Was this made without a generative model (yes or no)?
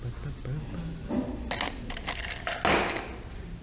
yes